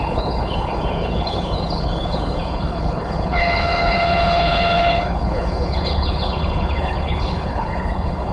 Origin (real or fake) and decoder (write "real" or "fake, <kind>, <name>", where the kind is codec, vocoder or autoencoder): fake, codec, HILCodec